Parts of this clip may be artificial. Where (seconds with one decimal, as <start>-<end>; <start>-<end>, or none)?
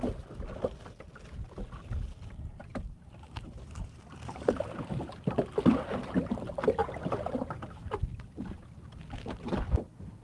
2.6-5.0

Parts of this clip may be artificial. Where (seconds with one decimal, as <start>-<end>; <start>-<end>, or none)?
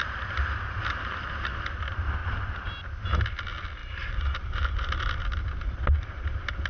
0.0-0.8; 2.2-2.7; 3.8-4.9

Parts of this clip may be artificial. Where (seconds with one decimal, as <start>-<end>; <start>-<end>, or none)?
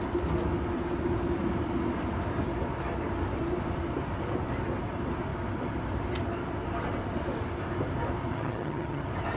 8.3-9.0